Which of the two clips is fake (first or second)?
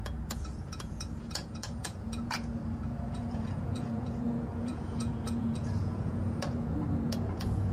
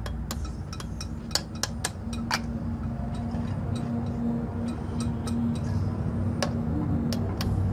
first